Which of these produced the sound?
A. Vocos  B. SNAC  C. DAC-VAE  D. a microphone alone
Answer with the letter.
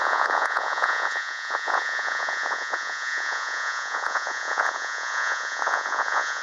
A